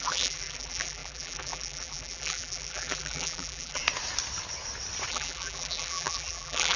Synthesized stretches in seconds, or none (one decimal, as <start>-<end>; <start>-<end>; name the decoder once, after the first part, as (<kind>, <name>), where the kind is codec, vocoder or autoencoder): 0.0-3.8 (vocoder, BigVGAN v2); 5.1-6.8